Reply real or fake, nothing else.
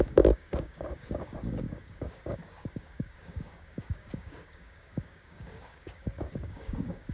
fake